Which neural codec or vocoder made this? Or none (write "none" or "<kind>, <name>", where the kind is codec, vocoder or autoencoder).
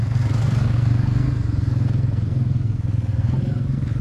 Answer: codec, SNAC